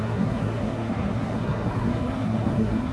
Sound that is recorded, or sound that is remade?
remade